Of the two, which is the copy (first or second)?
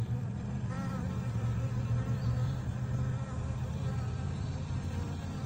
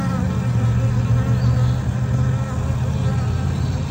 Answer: first